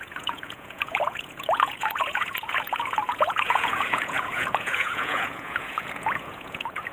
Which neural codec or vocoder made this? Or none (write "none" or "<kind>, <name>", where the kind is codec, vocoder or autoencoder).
vocoder, Vocos